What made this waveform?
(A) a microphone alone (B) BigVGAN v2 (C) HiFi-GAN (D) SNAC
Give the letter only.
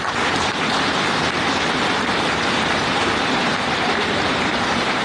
B